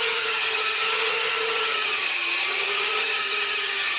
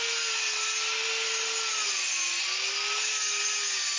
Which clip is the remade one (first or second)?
first